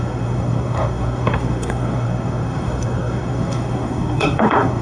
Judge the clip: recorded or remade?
remade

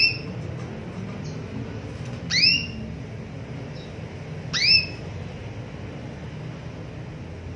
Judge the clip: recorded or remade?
recorded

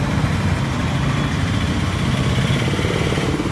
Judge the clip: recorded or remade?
recorded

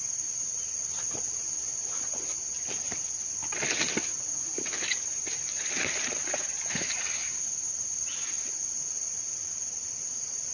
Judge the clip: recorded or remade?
recorded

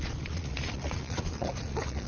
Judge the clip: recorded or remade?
remade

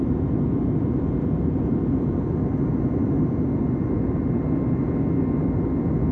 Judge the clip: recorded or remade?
recorded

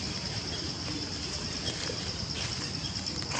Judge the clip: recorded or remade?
recorded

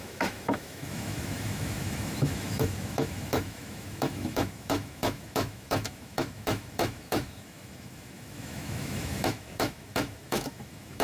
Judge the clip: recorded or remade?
remade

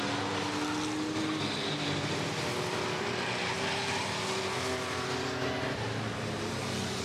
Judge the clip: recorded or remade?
recorded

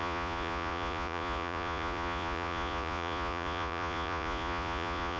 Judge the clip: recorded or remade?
remade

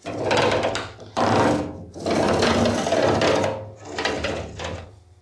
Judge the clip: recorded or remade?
recorded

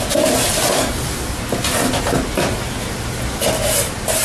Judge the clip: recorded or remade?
recorded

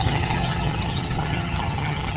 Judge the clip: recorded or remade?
remade